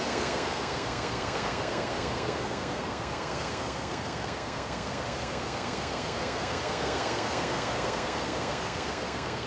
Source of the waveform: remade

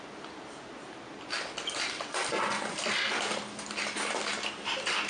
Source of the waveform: recorded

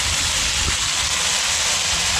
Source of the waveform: recorded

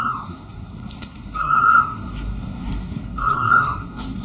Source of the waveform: remade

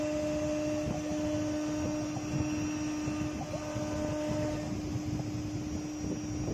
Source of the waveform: recorded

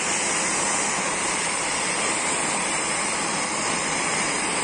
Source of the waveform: recorded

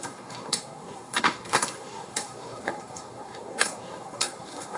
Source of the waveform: remade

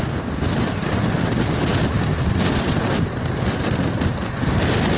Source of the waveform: recorded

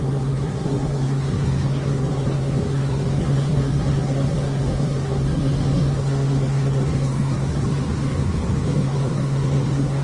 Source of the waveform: remade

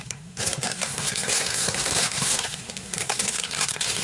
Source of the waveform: remade